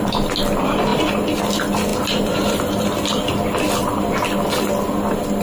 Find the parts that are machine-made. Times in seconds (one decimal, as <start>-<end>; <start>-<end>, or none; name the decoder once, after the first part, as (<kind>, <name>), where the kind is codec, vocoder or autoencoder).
none